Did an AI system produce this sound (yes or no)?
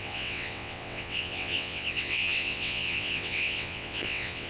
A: yes